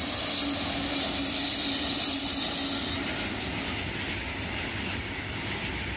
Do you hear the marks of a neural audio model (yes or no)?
no